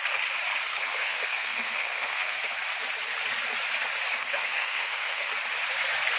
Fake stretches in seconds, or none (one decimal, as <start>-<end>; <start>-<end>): 0.7-2.4; 4.2-5.3